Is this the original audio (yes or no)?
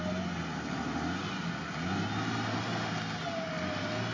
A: yes